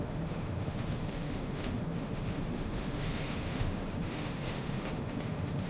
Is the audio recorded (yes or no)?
no